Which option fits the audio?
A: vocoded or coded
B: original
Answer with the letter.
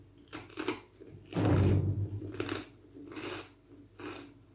B